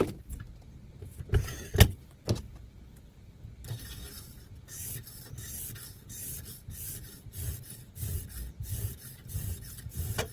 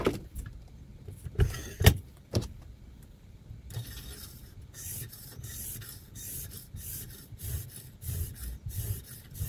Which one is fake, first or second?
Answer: second